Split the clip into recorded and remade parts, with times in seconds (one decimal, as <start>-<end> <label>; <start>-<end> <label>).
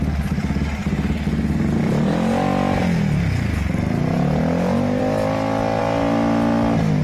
0.0-7.0 recorded